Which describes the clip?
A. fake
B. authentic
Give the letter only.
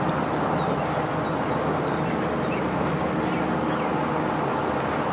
B